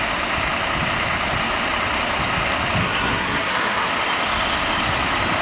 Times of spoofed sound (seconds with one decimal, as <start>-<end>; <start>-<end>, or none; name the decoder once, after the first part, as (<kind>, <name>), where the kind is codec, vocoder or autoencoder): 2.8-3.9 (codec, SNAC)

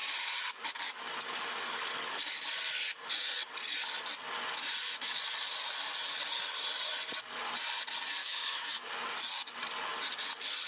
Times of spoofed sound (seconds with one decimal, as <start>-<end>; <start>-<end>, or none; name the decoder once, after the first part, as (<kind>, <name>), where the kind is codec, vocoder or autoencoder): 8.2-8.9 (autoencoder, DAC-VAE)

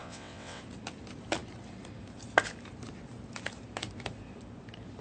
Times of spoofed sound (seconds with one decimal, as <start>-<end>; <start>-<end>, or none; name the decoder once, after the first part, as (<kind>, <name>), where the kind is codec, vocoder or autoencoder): 0.0-0.6 (vocoder, WaveNeXt)

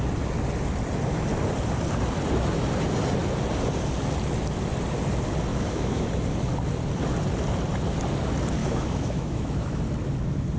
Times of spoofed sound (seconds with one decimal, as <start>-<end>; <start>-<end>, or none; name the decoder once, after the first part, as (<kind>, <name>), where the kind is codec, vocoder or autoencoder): 5.5-6.1 (autoencoder, DAC-VAE); 8.6-9.8